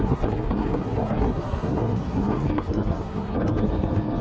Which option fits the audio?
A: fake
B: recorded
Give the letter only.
A